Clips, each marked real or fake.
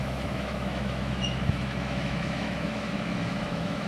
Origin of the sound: fake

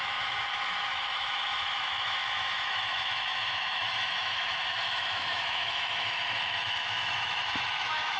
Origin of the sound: fake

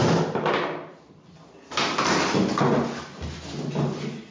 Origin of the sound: real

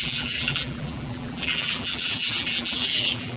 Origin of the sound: fake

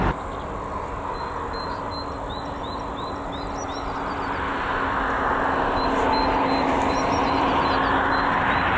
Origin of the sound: real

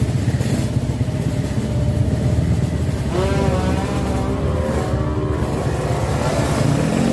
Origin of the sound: real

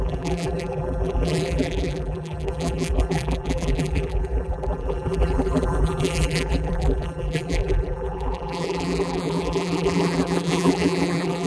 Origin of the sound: fake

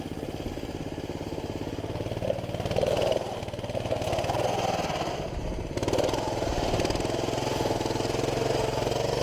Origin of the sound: real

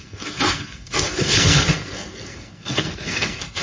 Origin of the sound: fake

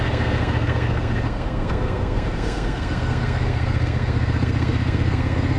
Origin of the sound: fake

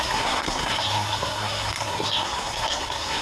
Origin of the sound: fake